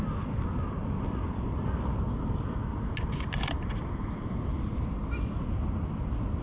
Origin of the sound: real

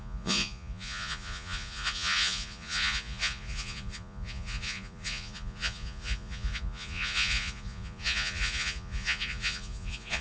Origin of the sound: fake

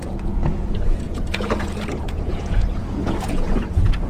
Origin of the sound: fake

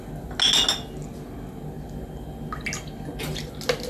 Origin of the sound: real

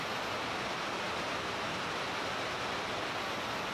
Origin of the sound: real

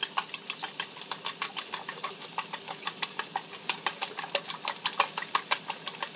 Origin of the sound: real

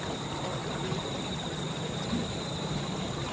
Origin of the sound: real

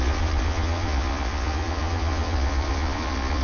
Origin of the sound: fake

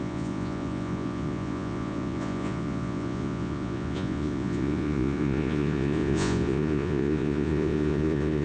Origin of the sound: fake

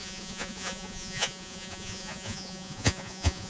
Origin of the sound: fake